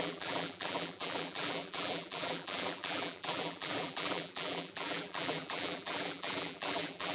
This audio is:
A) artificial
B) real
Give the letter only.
A